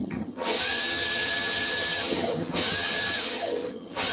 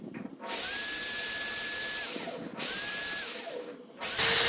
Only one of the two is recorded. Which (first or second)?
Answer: second